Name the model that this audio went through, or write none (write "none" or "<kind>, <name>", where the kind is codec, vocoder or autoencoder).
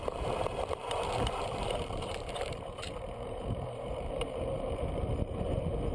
vocoder, BigVGAN v2